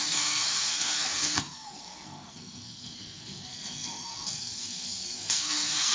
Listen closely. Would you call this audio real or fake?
fake